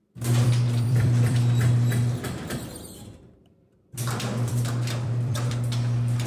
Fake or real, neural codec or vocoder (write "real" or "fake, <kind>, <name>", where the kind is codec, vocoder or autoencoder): fake, vocoder, BigVGAN v2